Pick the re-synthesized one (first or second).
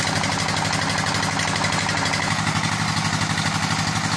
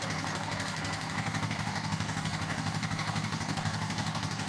second